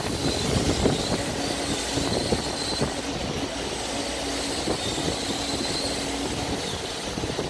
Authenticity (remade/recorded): recorded